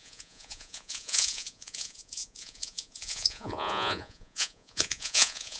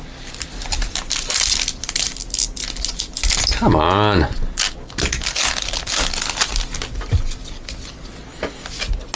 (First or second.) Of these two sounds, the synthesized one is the first